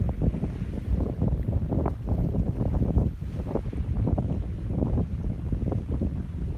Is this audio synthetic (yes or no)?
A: no